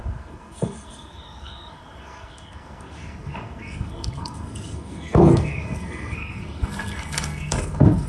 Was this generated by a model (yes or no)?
yes